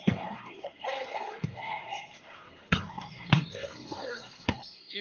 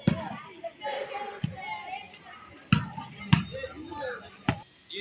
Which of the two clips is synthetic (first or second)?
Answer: first